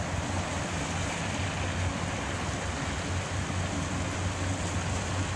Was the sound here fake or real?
real